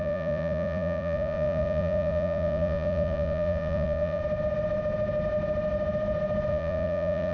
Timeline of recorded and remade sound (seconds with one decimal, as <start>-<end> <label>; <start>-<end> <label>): 0.0-4.2 remade; 4.2-6.5 recorded; 6.5-7.3 remade